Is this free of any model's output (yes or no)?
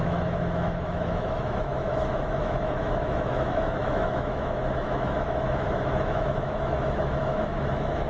no